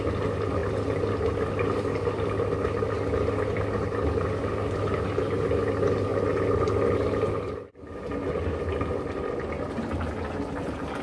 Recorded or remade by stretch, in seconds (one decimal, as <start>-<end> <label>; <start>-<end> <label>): 0.0-11.0 recorded